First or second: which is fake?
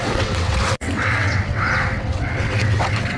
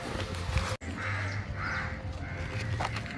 first